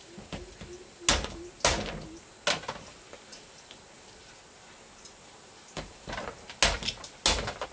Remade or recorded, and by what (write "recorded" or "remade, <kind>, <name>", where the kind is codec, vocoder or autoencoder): recorded